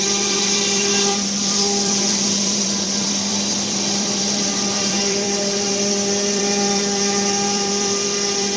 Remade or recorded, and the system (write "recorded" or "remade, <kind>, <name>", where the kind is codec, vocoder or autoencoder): remade, vocoder, BigVGAN v2